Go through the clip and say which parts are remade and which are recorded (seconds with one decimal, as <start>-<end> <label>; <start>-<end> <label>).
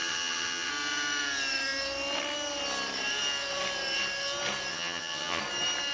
0.0-0.7 remade; 0.7-4.7 recorded; 4.7-5.4 remade; 5.4-5.9 recorded